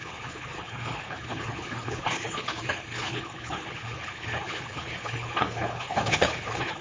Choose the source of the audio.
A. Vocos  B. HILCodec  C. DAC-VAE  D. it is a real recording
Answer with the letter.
B